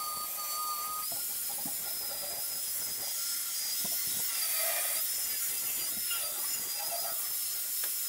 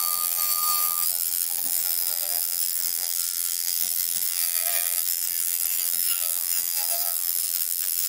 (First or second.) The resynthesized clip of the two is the second